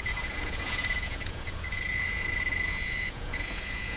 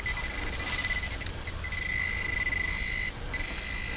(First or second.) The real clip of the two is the second